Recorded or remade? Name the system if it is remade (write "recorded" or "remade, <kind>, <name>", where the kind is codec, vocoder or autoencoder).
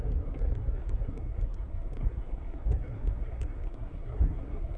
remade, codec, SNAC